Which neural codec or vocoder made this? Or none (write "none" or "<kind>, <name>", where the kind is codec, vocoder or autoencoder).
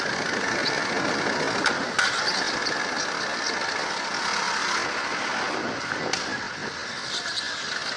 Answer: none